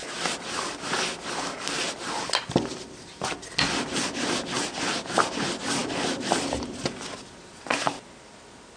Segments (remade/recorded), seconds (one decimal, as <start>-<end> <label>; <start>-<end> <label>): 0.0-8.8 recorded